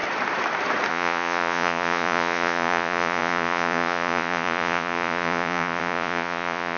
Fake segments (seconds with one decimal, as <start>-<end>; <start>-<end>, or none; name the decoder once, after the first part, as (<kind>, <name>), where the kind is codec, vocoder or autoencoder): 0.9-6.8 (vocoder, Vocos)